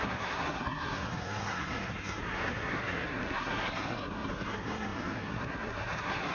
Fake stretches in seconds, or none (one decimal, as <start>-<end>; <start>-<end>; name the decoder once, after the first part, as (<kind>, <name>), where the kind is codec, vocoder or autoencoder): 0.0-6.3 (codec, SNAC)

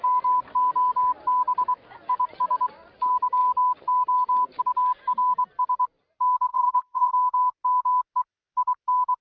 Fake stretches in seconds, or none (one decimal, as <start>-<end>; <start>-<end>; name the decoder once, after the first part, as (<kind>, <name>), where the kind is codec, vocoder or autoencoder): 6.5-7.1 (vocoder, Vocos)

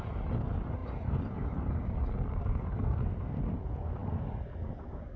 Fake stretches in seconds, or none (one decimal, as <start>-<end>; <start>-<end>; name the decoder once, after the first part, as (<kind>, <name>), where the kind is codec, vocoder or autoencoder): none

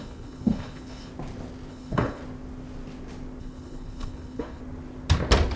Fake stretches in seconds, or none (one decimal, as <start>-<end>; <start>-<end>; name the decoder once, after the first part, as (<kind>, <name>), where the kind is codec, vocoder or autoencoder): 0.0-1.1 (codec, HILCodec); 1.7-2.2; 3.4-4.6

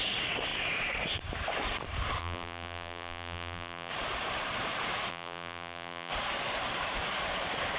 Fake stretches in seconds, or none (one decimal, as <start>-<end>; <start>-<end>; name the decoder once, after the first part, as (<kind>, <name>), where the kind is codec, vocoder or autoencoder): 2.2-3.9 (vocoder, BigVGAN v2); 5.1-6.1